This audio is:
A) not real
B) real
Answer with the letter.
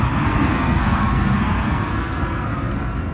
A